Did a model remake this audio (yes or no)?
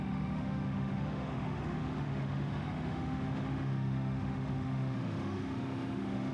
yes